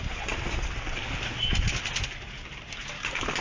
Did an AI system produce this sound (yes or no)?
no